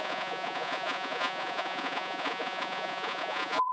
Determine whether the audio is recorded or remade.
remade